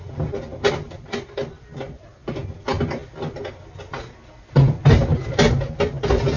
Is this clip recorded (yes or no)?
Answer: yes